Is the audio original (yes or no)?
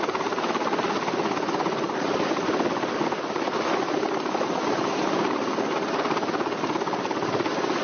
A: yes